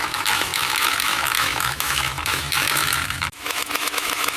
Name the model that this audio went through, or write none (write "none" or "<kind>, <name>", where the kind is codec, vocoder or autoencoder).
autoencoder, DAC-VAE